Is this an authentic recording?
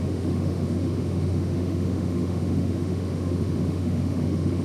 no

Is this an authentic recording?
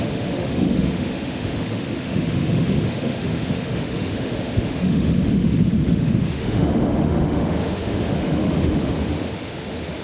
no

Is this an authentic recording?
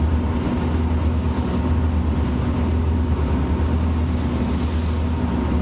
yes